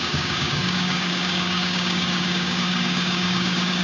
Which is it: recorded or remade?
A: remade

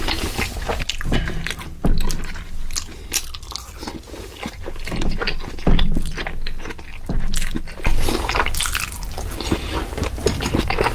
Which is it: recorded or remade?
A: recorded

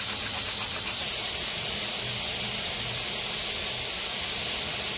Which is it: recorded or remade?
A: recorded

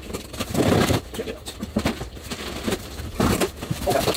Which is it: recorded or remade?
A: recorded